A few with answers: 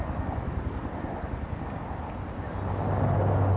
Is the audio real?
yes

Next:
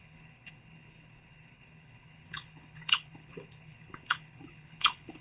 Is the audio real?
no